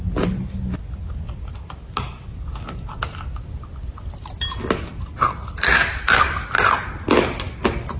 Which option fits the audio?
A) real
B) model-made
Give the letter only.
A